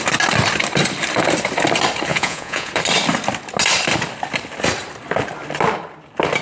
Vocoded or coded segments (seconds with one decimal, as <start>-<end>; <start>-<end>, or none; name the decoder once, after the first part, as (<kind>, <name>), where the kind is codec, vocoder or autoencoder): 2.1-2.7 (vocoder, Vocos)

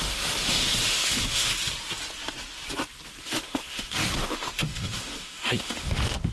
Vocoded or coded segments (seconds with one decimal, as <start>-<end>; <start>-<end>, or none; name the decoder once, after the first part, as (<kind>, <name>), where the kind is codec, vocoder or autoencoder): 0.0-1.5 (autoencoder, DAC-VAE); 3.2-6.3

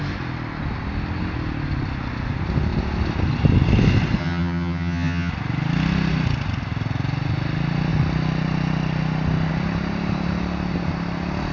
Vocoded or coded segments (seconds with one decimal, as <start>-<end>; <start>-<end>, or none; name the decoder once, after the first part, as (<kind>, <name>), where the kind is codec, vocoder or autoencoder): 4.2-5.3 (vocoder, HiFi-GAN)

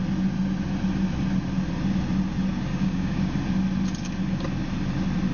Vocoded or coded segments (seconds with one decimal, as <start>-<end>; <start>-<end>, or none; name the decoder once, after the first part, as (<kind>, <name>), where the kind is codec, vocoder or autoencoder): 2.7-3.3 (codec, DAC)

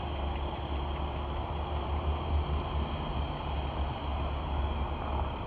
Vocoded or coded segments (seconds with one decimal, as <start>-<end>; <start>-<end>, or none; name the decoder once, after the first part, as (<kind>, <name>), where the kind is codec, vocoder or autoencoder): none

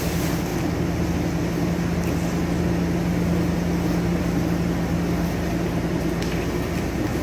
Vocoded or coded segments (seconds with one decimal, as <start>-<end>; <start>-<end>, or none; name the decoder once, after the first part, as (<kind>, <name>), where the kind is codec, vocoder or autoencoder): none

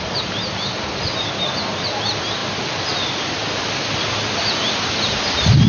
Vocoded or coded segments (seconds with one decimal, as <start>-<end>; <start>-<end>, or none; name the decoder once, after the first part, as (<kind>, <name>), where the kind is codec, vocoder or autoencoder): none

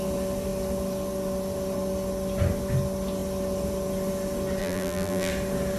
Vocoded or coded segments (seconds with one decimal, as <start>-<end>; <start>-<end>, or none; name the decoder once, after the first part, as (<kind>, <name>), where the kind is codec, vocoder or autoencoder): 4.6-5.3 (vocoder, BigVGAN v2)